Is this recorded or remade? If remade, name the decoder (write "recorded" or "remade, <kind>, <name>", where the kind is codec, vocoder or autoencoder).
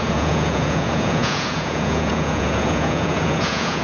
remade, vocoder, Vocos